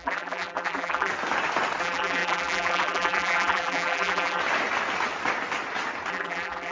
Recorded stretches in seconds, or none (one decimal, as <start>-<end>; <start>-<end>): 1.1-1.8; 4.4-6.1